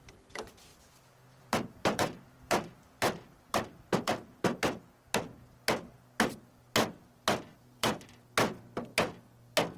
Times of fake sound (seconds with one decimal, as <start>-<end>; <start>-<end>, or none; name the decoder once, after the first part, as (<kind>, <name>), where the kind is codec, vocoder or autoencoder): 0.7-4.8 (vocoder, BigVGAN v2); 7.5-8.0